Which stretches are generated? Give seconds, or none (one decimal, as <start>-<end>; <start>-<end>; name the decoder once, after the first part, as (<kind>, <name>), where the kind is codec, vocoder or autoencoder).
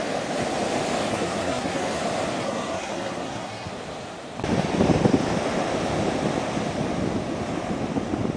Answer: 1.1-2.0 (codec, SNAC); 2.4-3.7